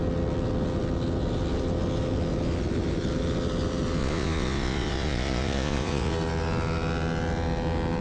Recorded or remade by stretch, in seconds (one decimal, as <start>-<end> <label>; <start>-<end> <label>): 0.0-4.0 recorded; 4.0-6.1 remade; 6.1-8.0 recorded